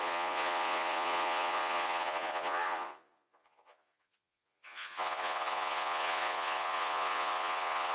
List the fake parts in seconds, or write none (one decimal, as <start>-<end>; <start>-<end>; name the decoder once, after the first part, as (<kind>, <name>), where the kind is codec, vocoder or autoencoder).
0.0-7.9 (vocoder, Vocos)